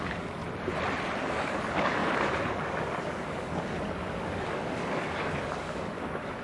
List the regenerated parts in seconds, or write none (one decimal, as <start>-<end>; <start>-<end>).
0.0-0.4; 1.2-6.4